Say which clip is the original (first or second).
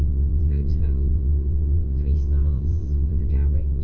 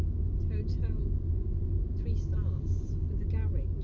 second